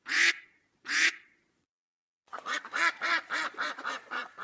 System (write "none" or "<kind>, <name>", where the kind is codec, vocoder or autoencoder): vocoder, Vocos